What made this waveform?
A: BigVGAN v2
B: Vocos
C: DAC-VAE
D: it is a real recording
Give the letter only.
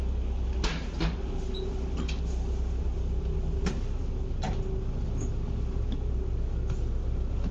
D